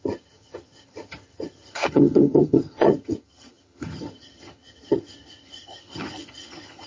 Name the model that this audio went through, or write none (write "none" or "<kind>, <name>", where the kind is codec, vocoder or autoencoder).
vocoder, HiFi-GAN